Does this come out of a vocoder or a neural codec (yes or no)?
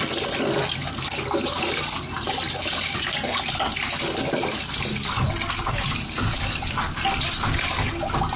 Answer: no